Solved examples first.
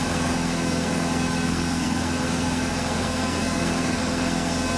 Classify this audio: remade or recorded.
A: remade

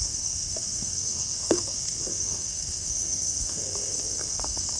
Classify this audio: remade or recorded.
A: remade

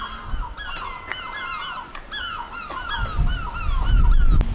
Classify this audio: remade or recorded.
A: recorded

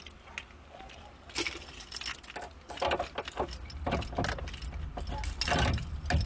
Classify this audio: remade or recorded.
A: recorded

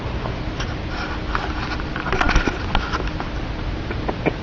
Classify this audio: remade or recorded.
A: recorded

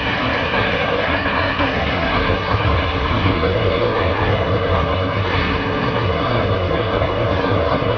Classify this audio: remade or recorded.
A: remade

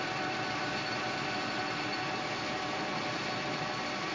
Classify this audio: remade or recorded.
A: recorded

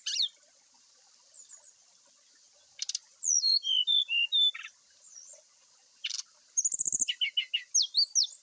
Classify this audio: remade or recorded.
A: recorded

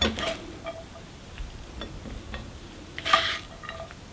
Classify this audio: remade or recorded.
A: recorded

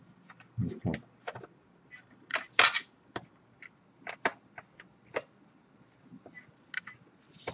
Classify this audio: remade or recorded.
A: recorded